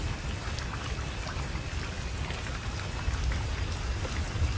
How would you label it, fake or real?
real